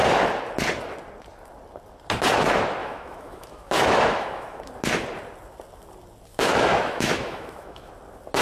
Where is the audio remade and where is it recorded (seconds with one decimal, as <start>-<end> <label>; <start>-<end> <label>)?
0.0-2.8 recorded; 2.8-4.6 remade; 4.6-6.3 recorded; 6.3-7.9 remade; 7.9-8.4 recorded